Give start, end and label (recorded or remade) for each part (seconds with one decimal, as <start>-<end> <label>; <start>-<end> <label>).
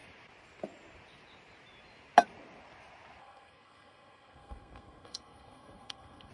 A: 0.0-3.2 recorded; 3.2-6.3 remade